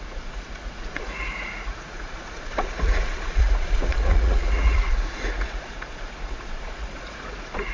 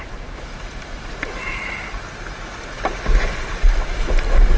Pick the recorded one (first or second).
second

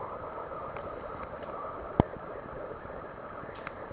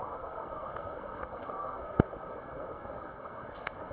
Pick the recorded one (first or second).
first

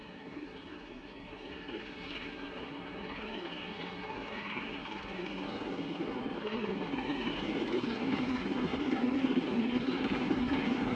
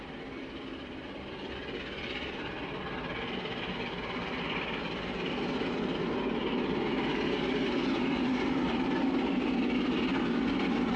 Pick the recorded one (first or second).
second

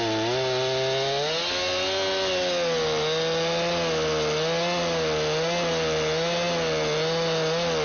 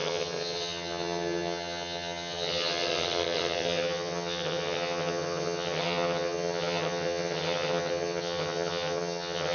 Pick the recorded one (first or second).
first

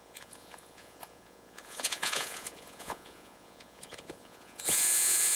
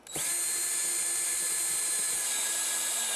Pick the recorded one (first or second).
second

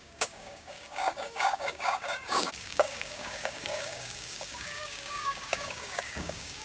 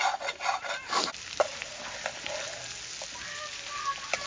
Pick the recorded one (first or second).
second